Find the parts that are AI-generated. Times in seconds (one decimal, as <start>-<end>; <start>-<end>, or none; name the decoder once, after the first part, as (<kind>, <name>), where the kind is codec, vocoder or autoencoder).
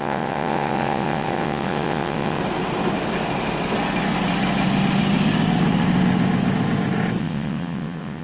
0.0-2.4 (vocoder, WaveNeXt); 7.2-8.2